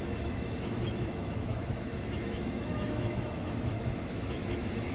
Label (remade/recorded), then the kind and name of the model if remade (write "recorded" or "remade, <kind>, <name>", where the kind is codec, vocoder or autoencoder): remade, autoencoder, DAC-VAE